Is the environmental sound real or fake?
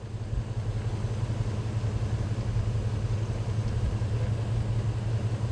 real